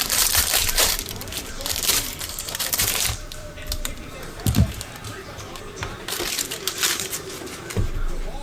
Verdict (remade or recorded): remade